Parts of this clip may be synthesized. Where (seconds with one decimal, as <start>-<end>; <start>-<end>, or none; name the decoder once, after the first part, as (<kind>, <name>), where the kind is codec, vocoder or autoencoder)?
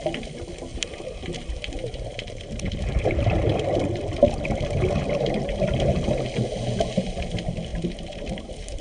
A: 0.7-3.1 (vocoder, BigVGAN v2); 7.7-8.8